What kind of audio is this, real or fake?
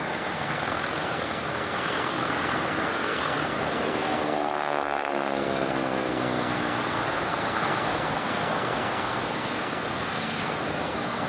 fake